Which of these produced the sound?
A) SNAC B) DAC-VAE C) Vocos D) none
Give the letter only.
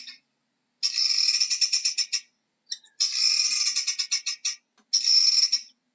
D